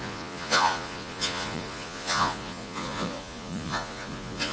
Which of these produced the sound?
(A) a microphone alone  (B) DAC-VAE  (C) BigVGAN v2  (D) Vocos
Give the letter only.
D